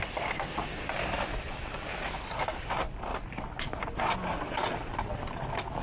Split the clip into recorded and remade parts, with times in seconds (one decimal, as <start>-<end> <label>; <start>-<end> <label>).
0.0-0.7 recorded; 0.7-1.9 remade; 1.9-5.8 recorded

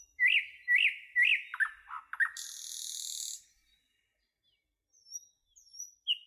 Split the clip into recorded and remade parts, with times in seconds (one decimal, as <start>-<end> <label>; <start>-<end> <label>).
0.0-6.3 recorded

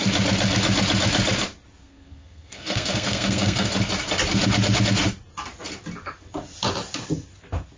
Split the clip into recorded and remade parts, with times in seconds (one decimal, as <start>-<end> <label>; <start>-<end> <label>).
0.0-1.8 recorded; 1.8-3.7 remade; 3.7-7.8 recorded